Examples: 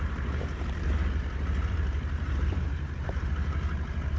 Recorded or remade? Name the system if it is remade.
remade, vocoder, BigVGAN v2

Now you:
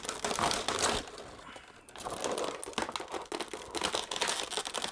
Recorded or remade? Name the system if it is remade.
recorded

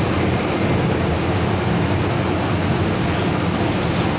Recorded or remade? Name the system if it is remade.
recorded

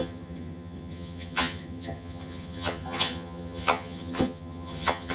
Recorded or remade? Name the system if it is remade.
remade, vocoder, HiFi-GAN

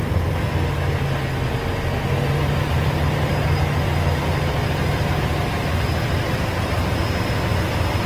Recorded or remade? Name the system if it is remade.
recorded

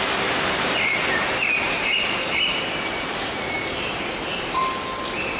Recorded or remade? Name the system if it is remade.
recorded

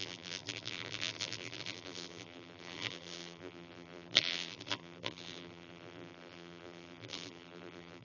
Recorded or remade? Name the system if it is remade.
remade, vocoder, BigVGAN v2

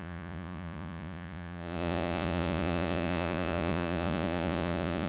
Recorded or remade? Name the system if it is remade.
remade, vocoder, Vocos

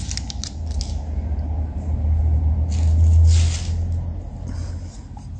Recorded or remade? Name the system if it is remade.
recorded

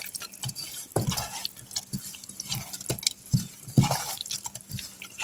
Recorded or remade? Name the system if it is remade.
recorded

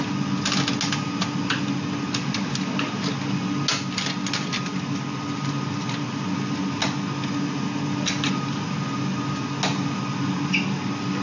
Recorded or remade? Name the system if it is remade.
recorded